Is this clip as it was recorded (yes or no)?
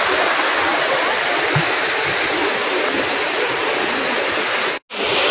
yes